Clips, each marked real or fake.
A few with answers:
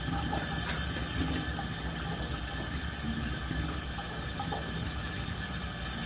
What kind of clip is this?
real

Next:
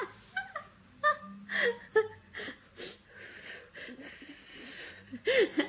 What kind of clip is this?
real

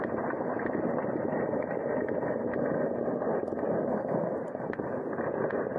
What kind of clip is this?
real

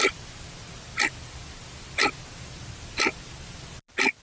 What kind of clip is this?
real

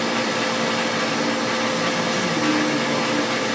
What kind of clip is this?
real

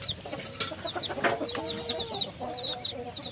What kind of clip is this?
real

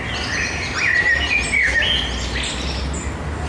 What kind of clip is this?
real